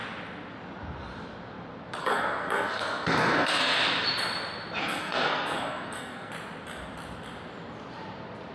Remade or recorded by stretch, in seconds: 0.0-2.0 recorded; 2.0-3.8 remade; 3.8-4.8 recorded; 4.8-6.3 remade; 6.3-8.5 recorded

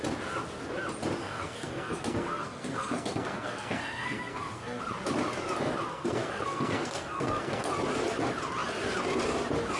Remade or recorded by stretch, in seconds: 0.0-1.2 recorded; 1.2-4.8 remade; 4.8-5.9 recorded; 5.9-7.7 remade; 7.7-9.8 recorded

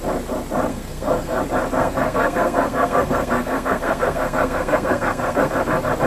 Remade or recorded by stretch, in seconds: 0.0-0.7 recorded; 0.7-1.4 remade; 1.4-1.8 recorded; 1.8-5.5 remade; 5.5-6.1 recorded

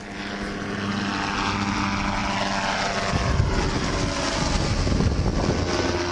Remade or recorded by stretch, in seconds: 0.0-6.1 recorded

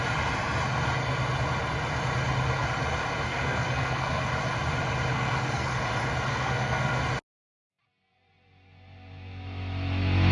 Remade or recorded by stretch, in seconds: 0.0-3.3 recorded; 3.3-4.3 remade; 4.3-5.1 recorded; 5.1-5.8 remade; 5.8-6.3 recorded; 6.3-7.0 remade; 7.0-10.3 recorded